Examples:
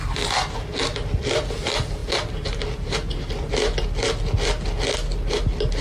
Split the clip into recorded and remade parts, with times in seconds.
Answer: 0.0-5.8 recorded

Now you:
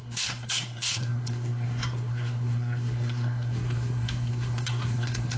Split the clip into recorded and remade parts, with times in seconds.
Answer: 0.0-5.4 remade

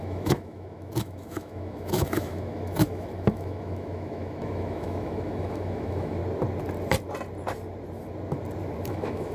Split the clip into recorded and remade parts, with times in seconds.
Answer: 0.0-6.2 remade; 6.2-8.9 recorded; 8.9-9.3 remade

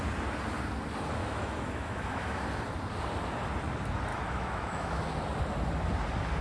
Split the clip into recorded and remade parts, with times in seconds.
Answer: 0.0-1.2 recorded; 1.2-2.4 remade; 2.4-4.1 recorded; 4.1-5.0 remade; 5.0-6.4 recorded